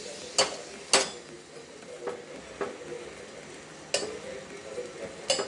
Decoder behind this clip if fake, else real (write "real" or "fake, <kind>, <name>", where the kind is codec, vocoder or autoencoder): real